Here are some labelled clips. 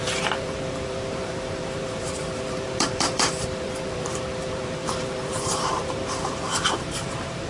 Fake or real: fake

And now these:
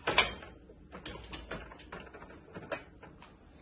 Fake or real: real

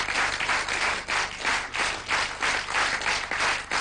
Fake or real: real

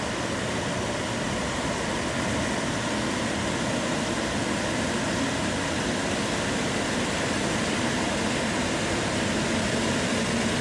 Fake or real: real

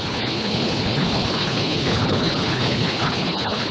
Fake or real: fake